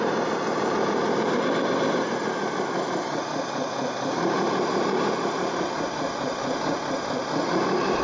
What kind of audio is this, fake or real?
fake